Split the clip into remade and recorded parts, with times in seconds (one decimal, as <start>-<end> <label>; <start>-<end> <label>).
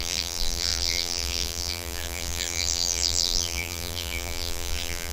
0.0-5.1 remade